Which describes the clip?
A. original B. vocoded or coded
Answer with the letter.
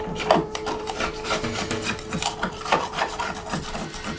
B